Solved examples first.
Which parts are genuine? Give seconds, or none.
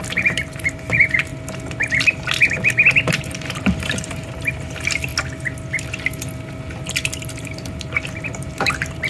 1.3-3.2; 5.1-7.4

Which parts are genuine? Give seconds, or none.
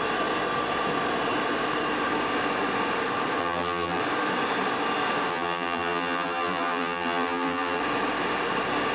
0.0-3.4; 4.0-5.3; 7.8-8.9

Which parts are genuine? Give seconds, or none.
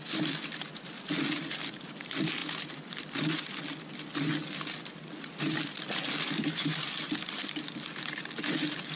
0.0-9.0